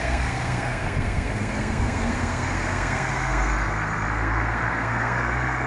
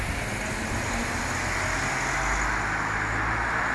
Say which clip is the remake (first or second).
first